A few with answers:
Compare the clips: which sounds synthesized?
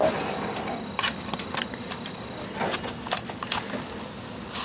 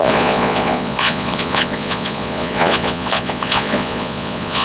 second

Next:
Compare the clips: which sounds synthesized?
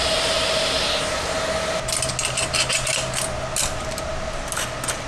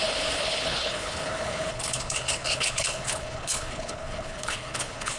second